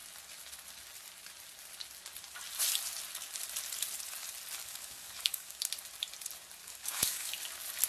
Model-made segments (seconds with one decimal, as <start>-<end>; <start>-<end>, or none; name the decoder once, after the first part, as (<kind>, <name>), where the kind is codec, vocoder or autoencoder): 4.6-5.7 (codec, DAC); 6.6-7.3